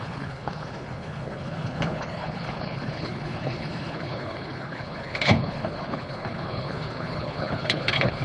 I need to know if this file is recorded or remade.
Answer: remade